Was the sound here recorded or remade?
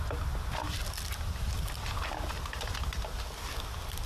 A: recorded